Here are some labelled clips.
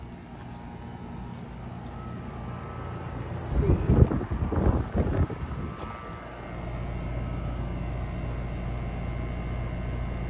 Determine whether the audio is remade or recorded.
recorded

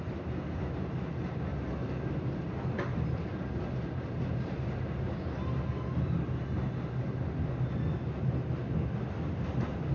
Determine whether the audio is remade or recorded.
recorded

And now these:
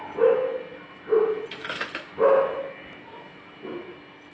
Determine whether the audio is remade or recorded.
recorded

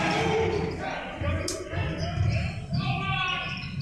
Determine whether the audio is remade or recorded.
recorded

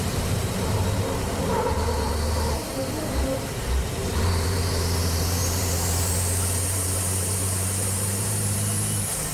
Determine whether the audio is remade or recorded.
remade